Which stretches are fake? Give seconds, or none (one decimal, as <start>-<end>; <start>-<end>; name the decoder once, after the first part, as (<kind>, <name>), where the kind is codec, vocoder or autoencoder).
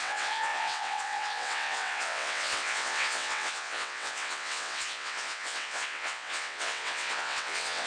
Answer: 0.0-7.9 (vocoder, WaveNeXt)